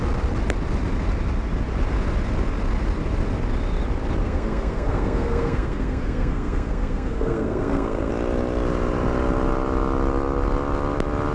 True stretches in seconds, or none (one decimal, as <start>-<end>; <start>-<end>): 0.0-4.2; 8.1-11.3